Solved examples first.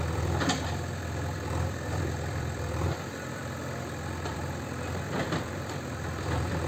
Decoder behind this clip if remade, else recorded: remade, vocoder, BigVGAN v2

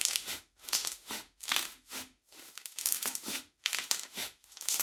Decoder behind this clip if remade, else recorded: remade, autoencoder, DAC-VAE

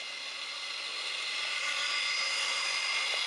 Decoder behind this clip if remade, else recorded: recorded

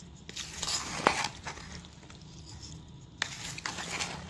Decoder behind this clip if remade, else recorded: recorded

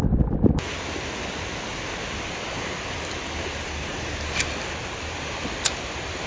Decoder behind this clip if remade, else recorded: recorded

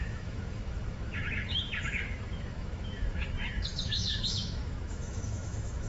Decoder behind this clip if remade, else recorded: remade, autoencoder, DAC-VAE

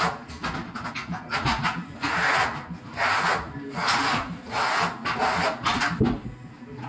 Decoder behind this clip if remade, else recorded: recorded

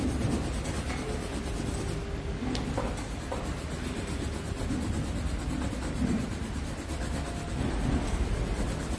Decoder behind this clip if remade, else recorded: recorded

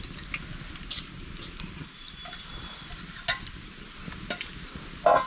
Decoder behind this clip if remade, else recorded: recorded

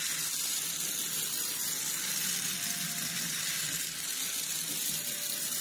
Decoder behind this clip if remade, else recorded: recorded